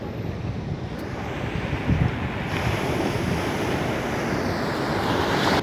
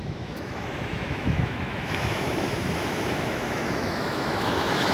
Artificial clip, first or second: second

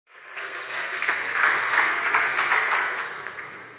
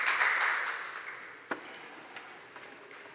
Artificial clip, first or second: first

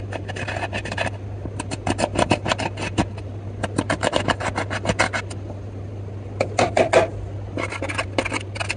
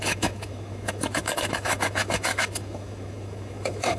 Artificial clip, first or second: second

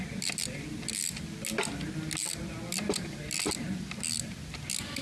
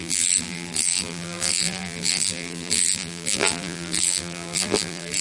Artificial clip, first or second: second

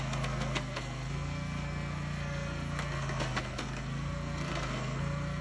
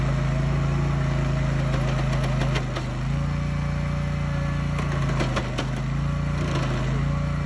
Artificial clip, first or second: first